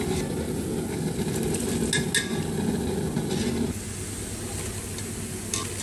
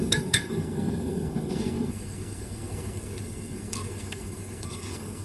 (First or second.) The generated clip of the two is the second